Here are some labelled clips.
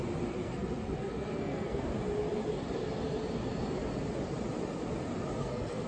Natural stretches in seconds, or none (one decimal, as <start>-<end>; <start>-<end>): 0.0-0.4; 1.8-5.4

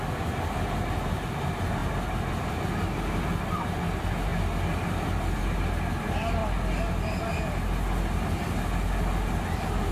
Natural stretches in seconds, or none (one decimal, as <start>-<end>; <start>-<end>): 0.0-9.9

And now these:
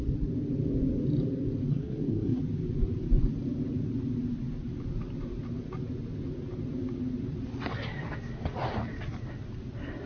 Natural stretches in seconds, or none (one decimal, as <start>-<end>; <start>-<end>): 0.0-1.7; 2.4-10.1